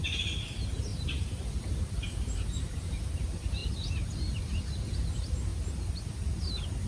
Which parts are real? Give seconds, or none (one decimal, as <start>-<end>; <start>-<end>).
0.0-0.9; 3.2-6.9